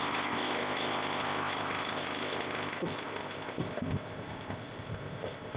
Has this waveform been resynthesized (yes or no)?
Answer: yes